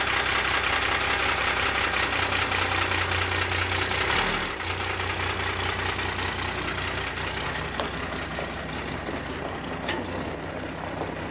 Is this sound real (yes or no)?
yes